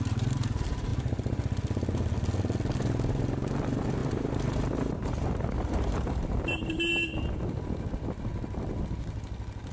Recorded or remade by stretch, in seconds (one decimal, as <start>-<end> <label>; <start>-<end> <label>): 0.0-0.9 remade; 0.9-3.1 recorded; 3.1-6.9 remade; 6.9-9.7 recorded